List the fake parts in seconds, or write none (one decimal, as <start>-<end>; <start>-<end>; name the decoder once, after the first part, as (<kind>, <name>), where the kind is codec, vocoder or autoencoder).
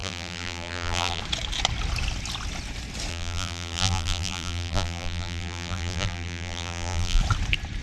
0.0-1.2 (vocoder, BigVGAN v2); 3.1-7.2